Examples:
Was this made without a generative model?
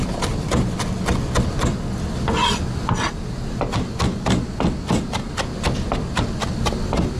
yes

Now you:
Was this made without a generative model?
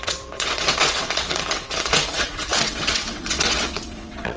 no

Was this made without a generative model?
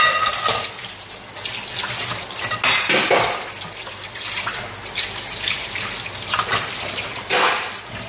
yes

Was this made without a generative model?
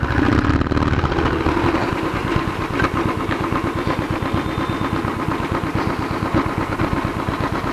yes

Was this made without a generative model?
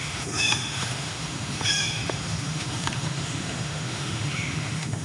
no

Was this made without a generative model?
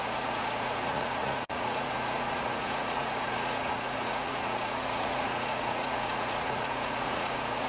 no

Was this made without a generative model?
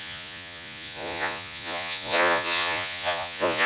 no